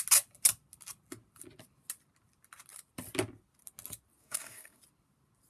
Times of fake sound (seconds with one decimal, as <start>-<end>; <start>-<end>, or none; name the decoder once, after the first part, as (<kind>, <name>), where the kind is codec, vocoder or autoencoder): 4.2-4.8 (codec, DAC)